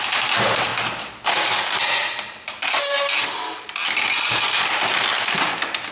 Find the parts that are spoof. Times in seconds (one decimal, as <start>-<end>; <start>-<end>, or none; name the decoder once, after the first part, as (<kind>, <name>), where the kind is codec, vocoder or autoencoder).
none